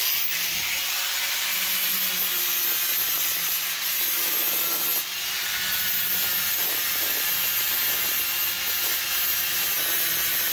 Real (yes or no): yes